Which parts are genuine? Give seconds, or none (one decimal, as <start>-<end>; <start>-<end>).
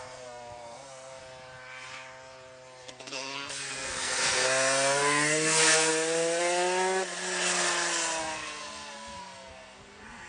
1.2-2.9; 5.9-8.2